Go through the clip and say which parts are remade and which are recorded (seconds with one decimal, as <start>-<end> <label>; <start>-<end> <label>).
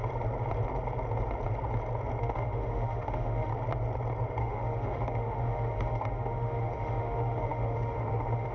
0.0-2.2 recorded; 2.2-3.5 remade; 3.5-4.4 recorded; 4.4-8.5 remade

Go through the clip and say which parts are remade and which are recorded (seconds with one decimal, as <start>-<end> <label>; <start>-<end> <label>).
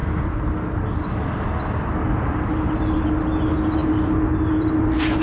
0.0-5.2 recorded